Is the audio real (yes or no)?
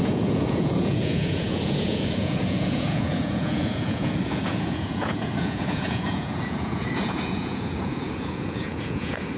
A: no